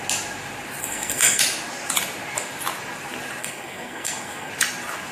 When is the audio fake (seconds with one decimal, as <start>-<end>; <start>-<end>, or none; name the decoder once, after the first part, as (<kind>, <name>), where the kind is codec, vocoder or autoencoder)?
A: 0.8-1.4 (codec, SNAC); 3.4-4.5